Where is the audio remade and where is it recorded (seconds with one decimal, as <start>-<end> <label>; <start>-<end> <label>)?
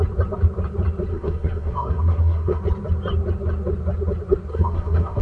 0.0-1.1 recorded; 1.1-2.6 remade; 2.6-4.5 recorded; 4.5-5.2 remade